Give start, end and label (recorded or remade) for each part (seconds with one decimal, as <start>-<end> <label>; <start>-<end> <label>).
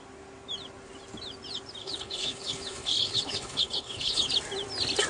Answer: 0.0-1.8 recorded; 1.8-4.3 remade; 4.3-5.1 recorded